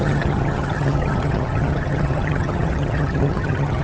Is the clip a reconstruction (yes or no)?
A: yes